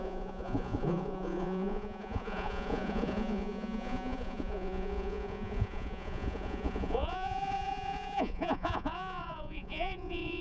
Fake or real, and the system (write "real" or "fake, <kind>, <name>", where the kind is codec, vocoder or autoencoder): fake, vocoder, Vocos